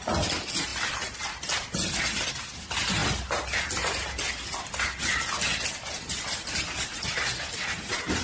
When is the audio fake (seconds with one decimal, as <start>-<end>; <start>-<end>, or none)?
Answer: none